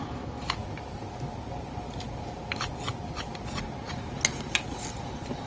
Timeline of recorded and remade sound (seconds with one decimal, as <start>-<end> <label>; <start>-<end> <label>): 0.0-5.5 recorded